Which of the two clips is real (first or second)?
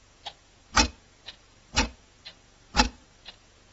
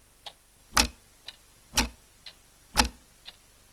second